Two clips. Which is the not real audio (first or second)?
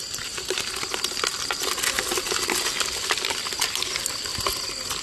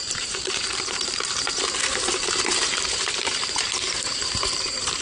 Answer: second